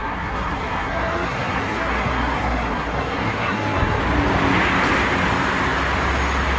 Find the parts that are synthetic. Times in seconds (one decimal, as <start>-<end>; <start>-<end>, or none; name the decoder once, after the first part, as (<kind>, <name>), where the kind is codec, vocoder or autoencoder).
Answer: 0.0-4.0 (codec, SNAC)